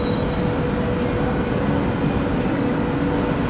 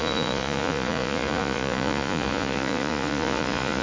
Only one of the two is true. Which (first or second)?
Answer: first